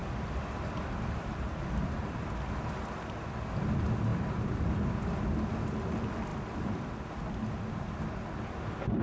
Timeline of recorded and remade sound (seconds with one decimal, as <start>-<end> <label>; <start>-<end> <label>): 0.0-9.0 recorded